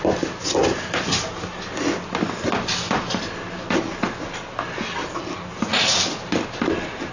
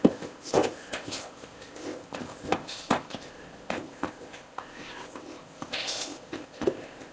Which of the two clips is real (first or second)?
first